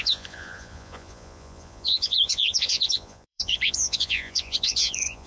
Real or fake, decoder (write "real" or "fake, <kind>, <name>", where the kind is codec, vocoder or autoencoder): fake, vocoder, Vocos